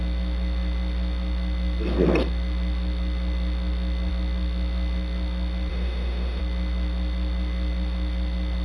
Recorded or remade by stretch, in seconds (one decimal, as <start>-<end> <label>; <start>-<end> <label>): 0.0-5.7 recorded; 5.7-6.4 remade; 6.4-8.6 recorded